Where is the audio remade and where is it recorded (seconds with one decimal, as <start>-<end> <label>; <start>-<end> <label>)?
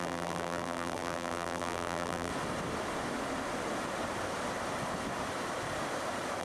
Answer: 0.0-2.3 remade; 2.3-6.4 recorded